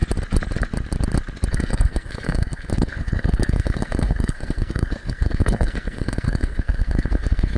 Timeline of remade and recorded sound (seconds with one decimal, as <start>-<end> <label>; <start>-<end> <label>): 0.0-1.5 recorded; 1.5-7.6 remade